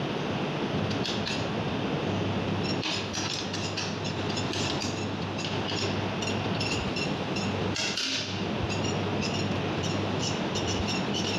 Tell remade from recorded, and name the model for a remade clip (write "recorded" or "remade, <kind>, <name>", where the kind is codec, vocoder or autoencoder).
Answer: recorded